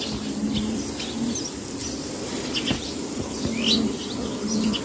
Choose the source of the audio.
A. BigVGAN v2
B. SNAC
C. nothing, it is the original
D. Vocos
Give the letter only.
C